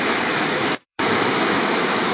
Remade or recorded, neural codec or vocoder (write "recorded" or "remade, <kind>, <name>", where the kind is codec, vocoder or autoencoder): remade, autoencoder, DAC-VAE